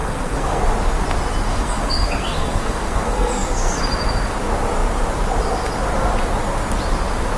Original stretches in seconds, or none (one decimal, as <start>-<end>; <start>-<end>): 0.6-1.5; 3.8-7.4